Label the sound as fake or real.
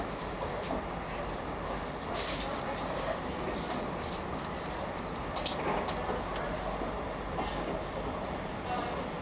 real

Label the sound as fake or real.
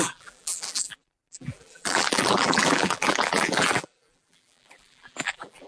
fake